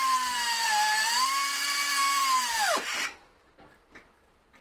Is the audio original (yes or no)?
no